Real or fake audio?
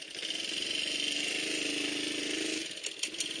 real